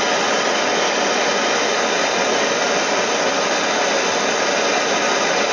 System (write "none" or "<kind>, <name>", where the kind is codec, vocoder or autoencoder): none